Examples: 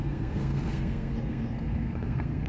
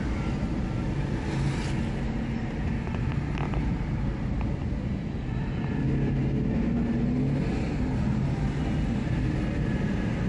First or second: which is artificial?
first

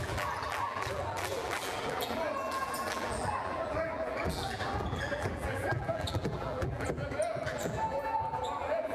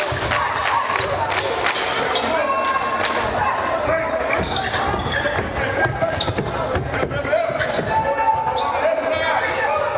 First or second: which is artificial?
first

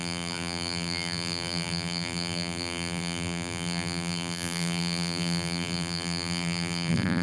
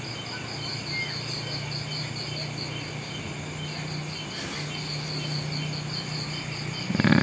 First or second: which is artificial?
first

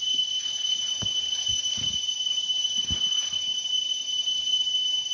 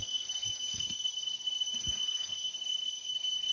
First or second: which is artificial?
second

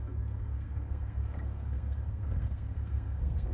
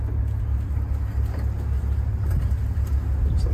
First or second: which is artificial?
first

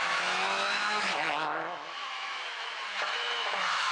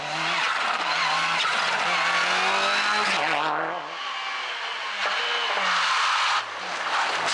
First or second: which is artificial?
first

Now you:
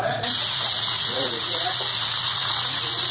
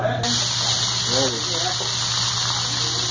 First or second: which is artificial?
first